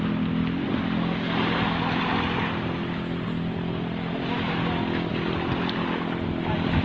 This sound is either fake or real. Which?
real